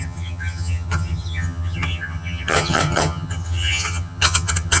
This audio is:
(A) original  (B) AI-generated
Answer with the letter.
B